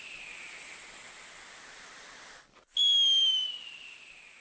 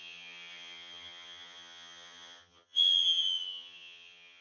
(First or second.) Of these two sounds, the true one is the first